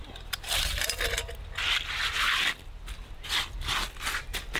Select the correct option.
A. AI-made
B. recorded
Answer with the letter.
B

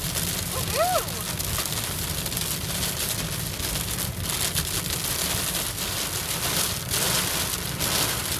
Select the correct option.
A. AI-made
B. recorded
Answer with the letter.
B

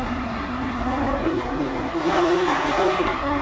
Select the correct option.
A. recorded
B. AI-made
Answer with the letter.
B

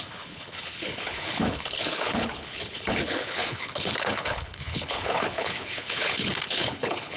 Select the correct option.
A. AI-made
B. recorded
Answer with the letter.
A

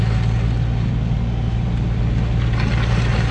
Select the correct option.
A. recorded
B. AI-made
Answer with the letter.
A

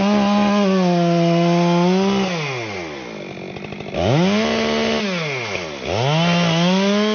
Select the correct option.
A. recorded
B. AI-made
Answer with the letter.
A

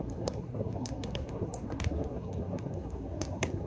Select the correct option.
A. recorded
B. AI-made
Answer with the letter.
B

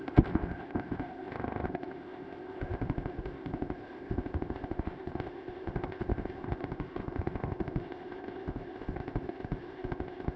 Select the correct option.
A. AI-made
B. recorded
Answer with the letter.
A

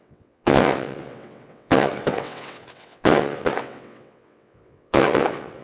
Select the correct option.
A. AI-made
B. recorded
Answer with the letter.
A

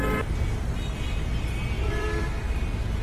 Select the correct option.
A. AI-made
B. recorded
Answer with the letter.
A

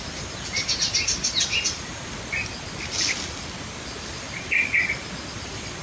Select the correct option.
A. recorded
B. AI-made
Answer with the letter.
A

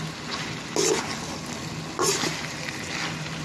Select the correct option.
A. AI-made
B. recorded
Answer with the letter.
B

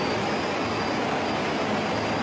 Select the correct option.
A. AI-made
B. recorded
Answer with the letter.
B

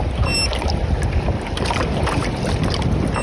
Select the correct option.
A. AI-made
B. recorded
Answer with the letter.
B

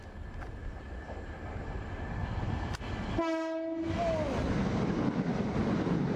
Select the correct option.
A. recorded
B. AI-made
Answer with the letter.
A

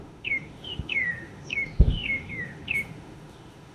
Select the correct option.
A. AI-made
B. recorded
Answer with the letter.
A